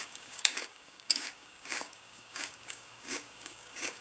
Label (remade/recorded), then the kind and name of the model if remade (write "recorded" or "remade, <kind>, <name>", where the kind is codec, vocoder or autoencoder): remade, codec, DAC